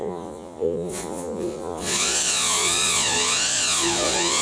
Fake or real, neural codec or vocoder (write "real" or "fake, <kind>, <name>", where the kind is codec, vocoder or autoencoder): fake, vocoder, Vocos